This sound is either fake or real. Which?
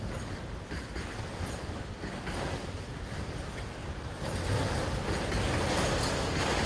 real